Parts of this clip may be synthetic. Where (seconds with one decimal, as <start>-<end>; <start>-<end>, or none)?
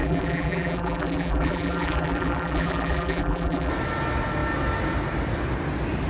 0.0-3.7